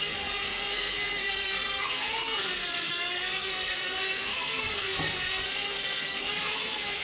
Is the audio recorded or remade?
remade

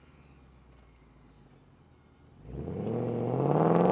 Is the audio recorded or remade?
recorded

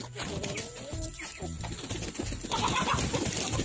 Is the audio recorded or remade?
recorded